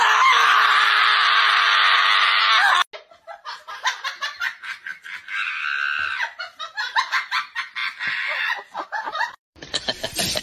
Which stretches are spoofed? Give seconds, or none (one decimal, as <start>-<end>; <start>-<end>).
6.1-6.9; 7.8-10.4